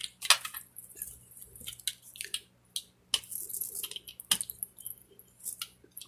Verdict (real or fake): real